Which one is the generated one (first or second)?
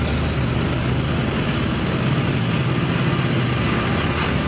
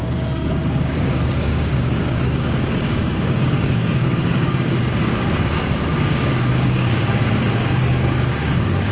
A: second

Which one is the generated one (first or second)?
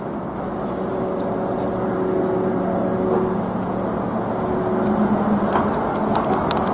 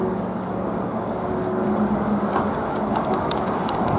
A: second